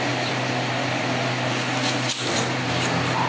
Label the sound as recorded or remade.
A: remade